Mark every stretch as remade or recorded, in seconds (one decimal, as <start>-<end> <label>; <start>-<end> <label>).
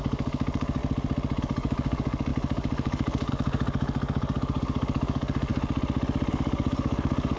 0.0-0.8 remade; 0.8-1.4 recorded; 1.4-5.5 remade; 5.5-6.3 recorded; 6.3-7.4 remade